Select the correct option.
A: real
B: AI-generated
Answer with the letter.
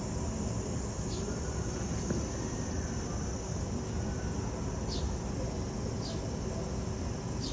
A